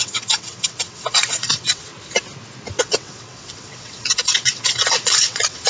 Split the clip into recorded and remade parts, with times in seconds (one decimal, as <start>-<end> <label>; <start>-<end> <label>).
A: 0.0-1.9 remade; 1.9-2.7 recorded; 2.7-5.7 remade